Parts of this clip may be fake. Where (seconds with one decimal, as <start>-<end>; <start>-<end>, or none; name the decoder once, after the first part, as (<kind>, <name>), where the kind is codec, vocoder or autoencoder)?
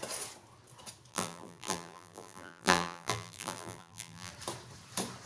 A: 1.1-4.3 (vocoder, BigVGAN v2)